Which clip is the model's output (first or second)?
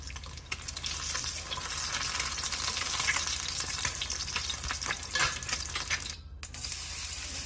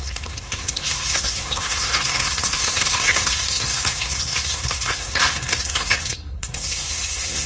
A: second